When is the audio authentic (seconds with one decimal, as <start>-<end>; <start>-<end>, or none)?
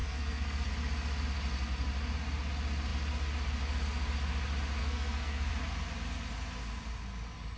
0.7-4.8; 5.5-7.6